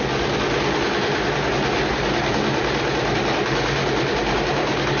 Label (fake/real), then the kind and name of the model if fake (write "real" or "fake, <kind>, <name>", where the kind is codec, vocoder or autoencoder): real